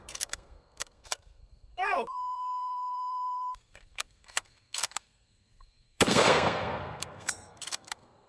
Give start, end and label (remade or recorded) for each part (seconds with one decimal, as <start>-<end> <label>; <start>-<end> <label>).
0.0-8.3 remade